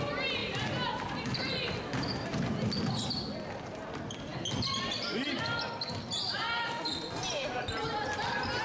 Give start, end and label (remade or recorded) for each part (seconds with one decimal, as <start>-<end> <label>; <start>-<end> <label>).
0.0-8.6 recorded